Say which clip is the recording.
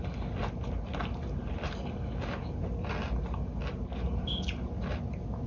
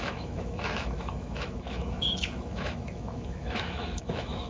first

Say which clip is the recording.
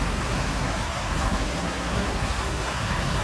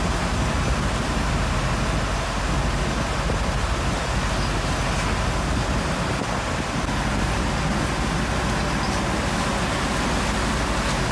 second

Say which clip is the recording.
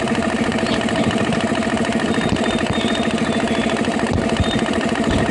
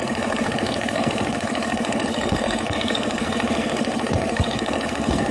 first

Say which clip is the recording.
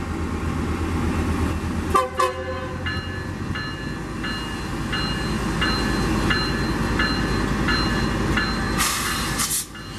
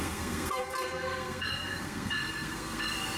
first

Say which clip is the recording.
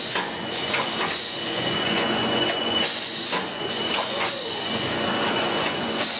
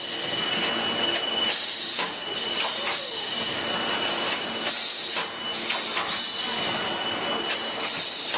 second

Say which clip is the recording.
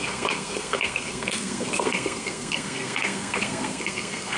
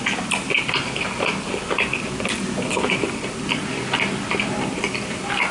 second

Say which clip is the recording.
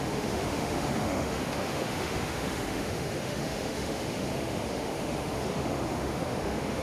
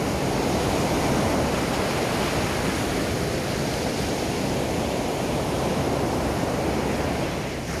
second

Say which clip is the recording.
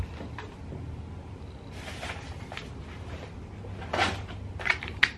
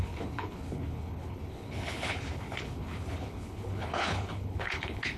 first